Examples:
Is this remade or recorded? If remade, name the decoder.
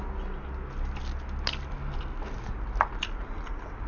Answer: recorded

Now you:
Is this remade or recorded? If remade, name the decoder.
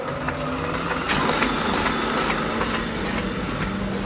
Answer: recorded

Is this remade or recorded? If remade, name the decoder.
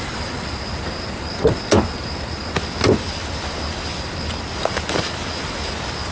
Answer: recorded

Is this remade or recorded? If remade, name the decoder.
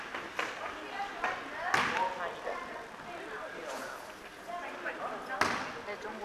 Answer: recorded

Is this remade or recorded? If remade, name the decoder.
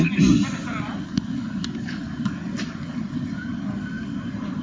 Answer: recorded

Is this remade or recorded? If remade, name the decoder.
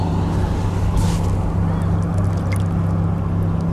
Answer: recorded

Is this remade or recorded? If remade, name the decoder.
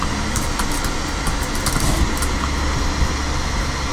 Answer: recorded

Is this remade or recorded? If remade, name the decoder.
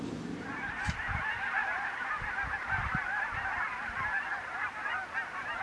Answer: remade, vocoder, BigVGAN v2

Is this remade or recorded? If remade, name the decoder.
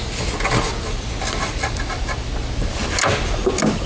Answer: recorded